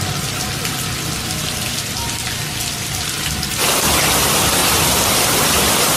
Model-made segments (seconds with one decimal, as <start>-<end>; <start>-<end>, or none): 4.6-6.0

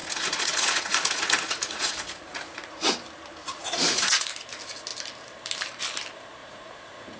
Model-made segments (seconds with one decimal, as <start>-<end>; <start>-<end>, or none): 0.0-2.9; 3.4-4.3; 6.4-7.2

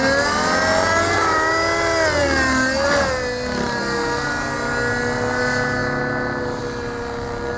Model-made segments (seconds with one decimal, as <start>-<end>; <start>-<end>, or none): none